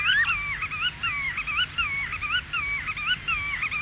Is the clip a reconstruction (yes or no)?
no